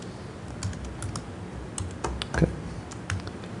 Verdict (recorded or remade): recorded